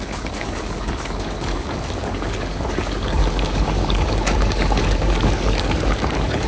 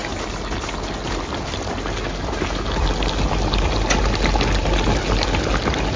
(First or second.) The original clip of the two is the second